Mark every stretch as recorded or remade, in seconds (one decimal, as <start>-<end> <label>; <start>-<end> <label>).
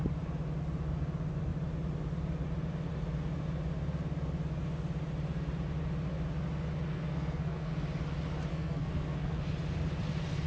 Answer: 0.0-6.9 recorded; 6.9-7.7 remade; 7.7-8.5 recorded; 8.5-9.4 remade; 9.4-10.5 recorded